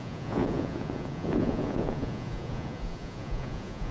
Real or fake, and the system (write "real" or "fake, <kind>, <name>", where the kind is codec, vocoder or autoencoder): fake, vocoder, Vocos